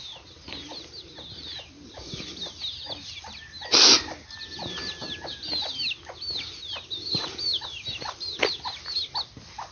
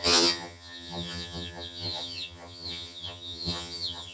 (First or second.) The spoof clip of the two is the second